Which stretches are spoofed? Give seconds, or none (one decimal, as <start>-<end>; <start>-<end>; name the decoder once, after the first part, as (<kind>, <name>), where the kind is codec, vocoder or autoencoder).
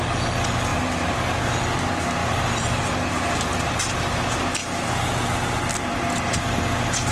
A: 0.7-1.5 (vocoder, BigVGAN v2); 2.2-3.3